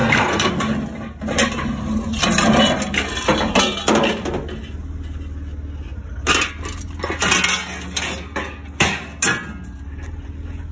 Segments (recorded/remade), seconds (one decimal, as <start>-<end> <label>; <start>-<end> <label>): 0.0-0.5 remade; 0.5-10.7 recorded